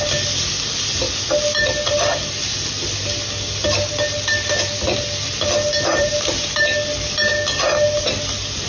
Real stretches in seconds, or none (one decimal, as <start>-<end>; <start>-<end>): 0.0-5.9; 6.6-8.7